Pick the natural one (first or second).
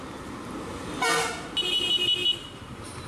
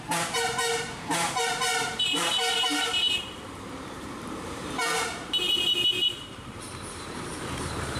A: first